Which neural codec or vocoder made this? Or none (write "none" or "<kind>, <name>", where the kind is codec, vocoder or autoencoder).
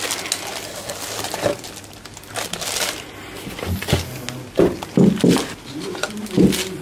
none